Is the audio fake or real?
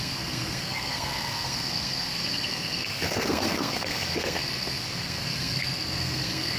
fake